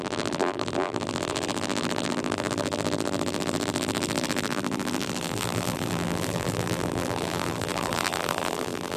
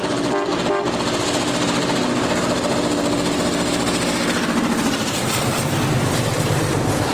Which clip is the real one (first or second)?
second